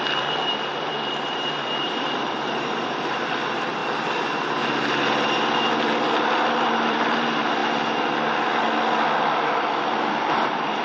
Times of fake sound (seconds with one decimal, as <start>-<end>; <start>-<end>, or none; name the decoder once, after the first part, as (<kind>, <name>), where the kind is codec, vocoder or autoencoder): 0.0-3.8 (vocoder, BigVGAN v2); 6.5-7.6; 10.1-10.8